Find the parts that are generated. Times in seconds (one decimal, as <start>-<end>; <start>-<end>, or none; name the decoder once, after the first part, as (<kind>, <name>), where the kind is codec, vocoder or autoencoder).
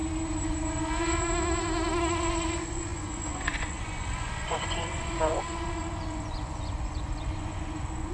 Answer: 2.0-8.1 (vocoder, Vocos)